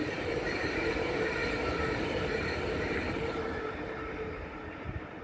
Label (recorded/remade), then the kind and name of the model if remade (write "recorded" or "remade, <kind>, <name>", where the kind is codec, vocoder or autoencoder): remade, vocoder, BigVGAN v2